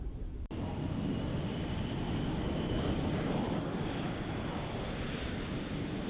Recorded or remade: recorded